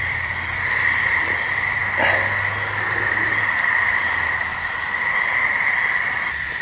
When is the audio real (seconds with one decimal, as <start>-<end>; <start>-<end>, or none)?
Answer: 1.8-3.6; 4.5-5.1